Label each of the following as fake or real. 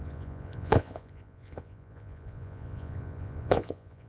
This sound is fake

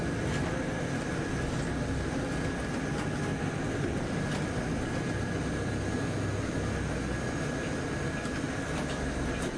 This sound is real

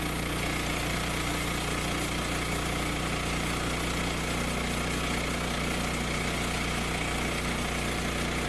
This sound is real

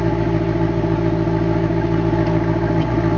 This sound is real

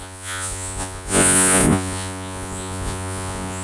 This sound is fake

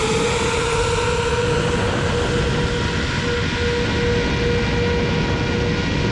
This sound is real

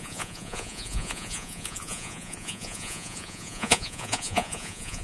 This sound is fake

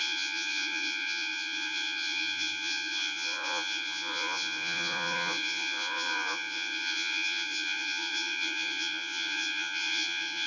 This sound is fake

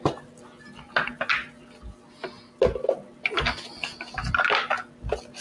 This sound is real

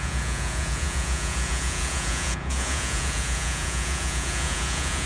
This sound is fake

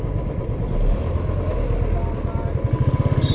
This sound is real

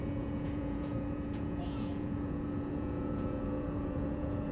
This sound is fake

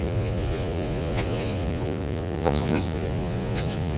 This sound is fake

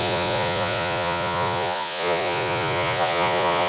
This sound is fake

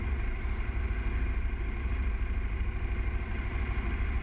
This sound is real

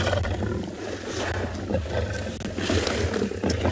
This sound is real